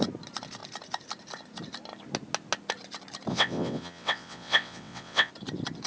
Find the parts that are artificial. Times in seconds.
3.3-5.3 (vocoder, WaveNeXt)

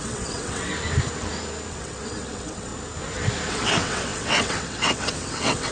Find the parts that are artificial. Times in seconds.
0.0-0.7 (vocoder, WaveNeXt); 1.7-2.7; 3.5-5.7

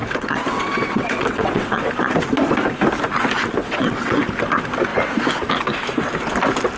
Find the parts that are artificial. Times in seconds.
0.0-1.9 (vocoder, WaveNeXt); 3.6-4.2